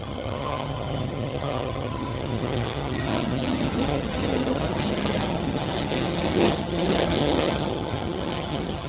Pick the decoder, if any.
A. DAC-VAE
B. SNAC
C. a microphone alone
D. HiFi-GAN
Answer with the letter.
D